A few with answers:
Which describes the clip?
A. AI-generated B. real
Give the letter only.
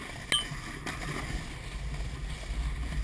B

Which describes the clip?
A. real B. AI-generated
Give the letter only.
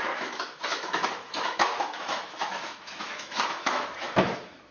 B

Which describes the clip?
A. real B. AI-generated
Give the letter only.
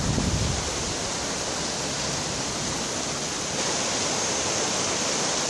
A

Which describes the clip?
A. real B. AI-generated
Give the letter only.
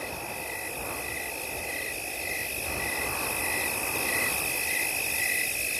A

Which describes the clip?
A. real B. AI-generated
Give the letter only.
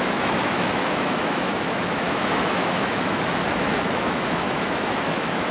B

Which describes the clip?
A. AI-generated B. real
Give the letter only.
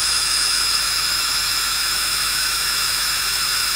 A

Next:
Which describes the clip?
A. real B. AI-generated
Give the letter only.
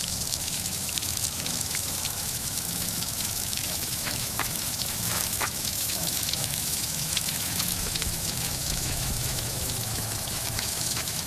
B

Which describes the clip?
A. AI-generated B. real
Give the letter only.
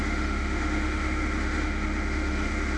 A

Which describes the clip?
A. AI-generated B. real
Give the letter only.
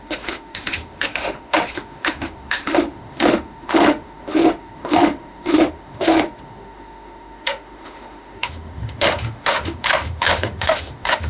A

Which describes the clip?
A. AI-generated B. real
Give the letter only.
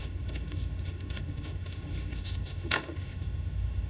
A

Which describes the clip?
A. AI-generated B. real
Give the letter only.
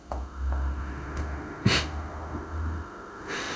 A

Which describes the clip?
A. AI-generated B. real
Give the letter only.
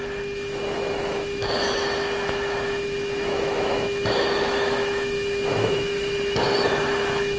A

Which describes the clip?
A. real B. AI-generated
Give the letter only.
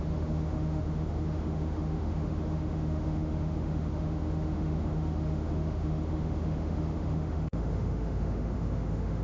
B